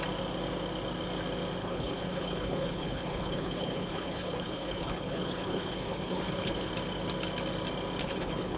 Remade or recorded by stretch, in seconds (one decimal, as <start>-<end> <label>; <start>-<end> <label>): 0.0-1.6 recorded; 1.6-6.7 remade; 6.7-8.0 recorded; 8.0-8.6 remade